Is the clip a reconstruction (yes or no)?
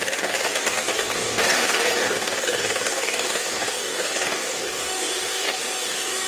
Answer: yes